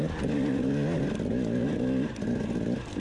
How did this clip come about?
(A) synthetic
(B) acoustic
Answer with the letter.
B